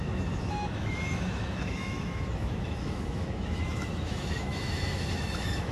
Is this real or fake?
fake